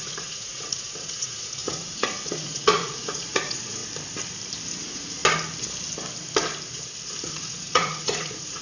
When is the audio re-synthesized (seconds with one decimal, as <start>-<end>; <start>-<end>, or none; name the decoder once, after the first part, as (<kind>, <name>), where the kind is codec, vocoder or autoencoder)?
0.0-3.8 (vocoder, Vocos); 4.8-5.2; 7.2-8.6